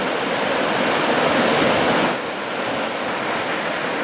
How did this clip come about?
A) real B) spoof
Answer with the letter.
A